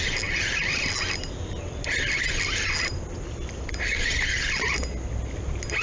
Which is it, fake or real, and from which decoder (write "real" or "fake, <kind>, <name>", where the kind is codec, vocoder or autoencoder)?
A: real